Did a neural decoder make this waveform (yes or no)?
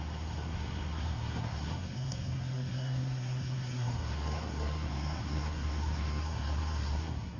yes